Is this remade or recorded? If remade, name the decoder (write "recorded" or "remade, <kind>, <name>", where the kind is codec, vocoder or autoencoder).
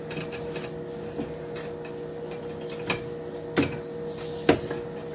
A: recorded